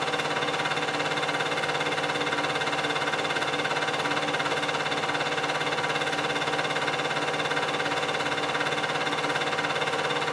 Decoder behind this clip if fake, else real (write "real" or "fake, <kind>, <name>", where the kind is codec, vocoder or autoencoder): real